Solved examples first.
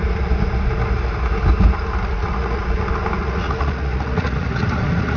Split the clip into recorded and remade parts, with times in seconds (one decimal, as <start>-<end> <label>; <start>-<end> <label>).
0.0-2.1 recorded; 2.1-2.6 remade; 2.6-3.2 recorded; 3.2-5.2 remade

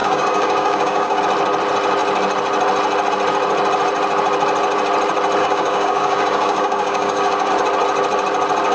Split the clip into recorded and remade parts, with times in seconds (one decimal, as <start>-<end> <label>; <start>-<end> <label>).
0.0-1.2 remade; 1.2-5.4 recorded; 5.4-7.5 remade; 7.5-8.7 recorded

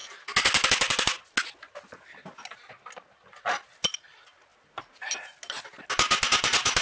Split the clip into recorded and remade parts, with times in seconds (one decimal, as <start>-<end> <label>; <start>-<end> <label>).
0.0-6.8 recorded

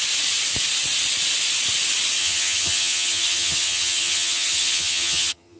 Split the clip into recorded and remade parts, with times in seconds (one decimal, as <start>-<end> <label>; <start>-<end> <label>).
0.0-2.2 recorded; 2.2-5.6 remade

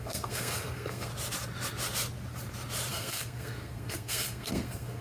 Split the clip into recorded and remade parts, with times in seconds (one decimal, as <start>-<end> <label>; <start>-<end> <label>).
0.0-1.1 remade; 1.1-2.9 recorded; 2.9-5.0 remade

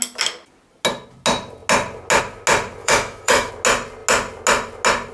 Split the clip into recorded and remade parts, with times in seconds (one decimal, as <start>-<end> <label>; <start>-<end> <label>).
0.0-2.8 recorded; 2.8-3.5 remade; 3.5-5.1 recorded

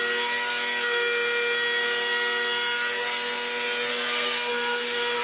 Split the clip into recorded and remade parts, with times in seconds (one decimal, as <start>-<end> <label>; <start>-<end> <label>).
0.0-3.9 recorded; 3.9-5.2 remade

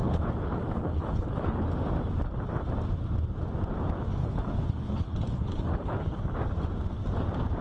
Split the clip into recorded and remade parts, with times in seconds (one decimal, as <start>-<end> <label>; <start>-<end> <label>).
0.0-1.7 remade; 1.7-4.2 recorded; 4.2-6.2 remade; 6.2-7.6 recorded